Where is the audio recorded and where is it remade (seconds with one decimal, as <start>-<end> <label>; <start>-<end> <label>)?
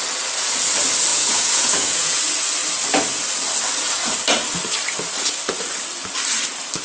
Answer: 0.0-1.1 recorded; 1.1-2.2 remade; 2.2-6.8 recorded